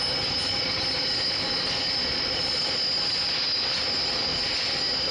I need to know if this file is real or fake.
real